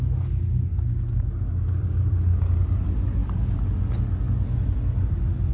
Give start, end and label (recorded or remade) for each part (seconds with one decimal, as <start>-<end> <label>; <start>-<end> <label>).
0.0-0.7 recorded; 0.7-1.3 remade; 1.3-5.5 recorded